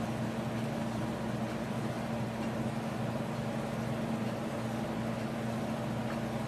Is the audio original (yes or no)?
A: yes